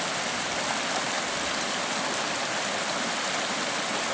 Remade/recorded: recorded